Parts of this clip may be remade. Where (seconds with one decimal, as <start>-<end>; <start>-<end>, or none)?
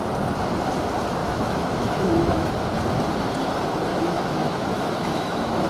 1.2-2.5; 3.9-5.7